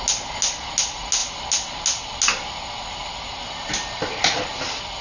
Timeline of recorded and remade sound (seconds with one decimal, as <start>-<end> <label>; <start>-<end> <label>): 0.0-5.0 recorded